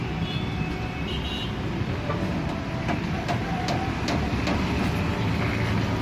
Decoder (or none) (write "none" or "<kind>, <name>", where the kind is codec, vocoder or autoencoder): none